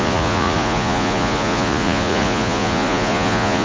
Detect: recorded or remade remade